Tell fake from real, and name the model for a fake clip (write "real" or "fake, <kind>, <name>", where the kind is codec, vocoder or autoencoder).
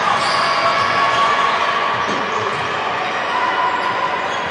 fake, vocoder, Vocos